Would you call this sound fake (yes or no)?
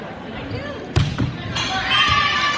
no